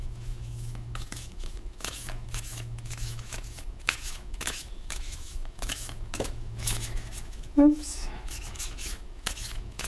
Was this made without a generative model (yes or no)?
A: no